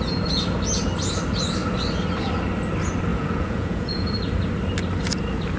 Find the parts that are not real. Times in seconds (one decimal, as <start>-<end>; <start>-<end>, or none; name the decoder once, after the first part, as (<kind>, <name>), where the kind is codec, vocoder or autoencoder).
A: 3.1-4.1 (vocoder, Vocos)